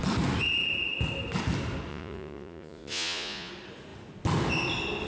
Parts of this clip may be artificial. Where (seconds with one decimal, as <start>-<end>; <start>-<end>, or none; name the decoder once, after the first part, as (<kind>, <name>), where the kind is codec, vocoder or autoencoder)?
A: 1.9-3.5 (vocoder, Vocos)